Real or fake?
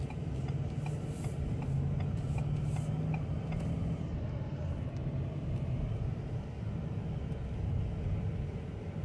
real